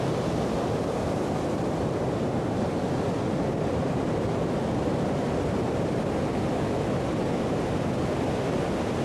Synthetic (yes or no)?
no